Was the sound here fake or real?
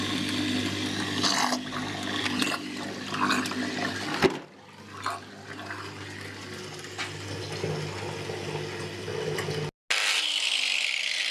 real